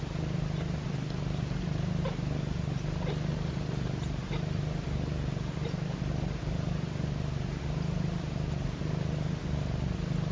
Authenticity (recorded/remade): recorded